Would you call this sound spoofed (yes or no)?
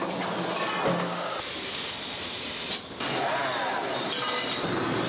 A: no